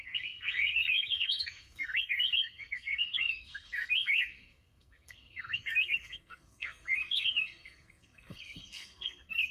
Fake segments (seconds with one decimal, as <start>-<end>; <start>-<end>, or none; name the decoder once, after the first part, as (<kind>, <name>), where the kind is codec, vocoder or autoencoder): 0.0-9.5 (codec, SNAC)